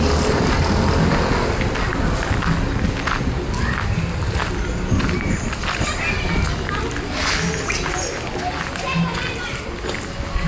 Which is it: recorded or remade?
recorded